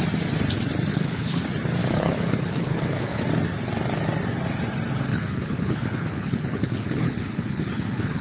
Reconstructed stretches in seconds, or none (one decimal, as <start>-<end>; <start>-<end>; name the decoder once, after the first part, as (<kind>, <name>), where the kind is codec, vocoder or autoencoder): 0.9-1.4 (codec, HILCodec); 1.8-3.2; 5.1-8.2